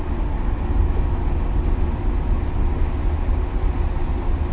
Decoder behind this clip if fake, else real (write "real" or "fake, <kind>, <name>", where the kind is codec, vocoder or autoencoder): real